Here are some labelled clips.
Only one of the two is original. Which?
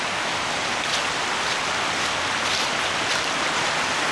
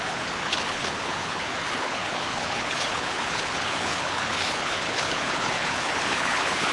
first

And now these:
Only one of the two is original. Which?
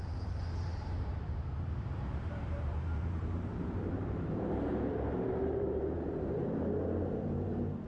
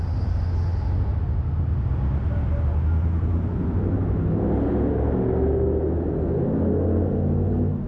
second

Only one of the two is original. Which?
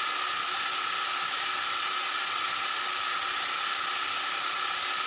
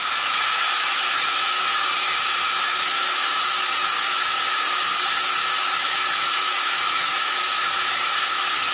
first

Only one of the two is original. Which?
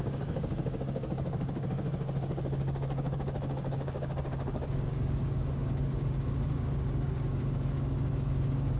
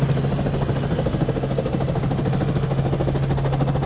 second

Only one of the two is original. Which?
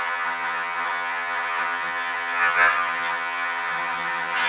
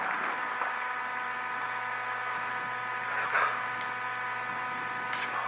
second